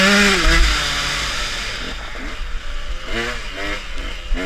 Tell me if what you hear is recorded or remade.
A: recorded